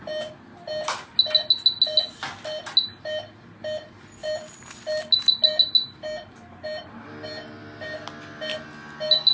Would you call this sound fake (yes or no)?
no